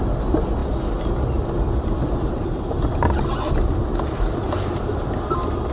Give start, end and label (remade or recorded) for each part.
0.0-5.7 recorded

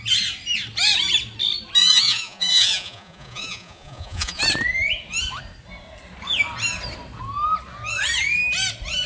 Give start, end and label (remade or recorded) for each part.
0.0-1.8 recorded; 1.8-4.4 remade; 4.4-9.1 recorded

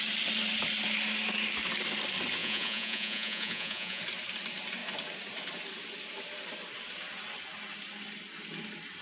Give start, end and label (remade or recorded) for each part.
0.0-2.4 recorded; 2.4-4.0 remade; 4.0-9.0 recorded